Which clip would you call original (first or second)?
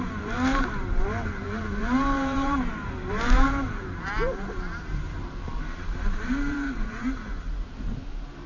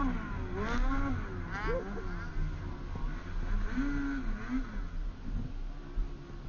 second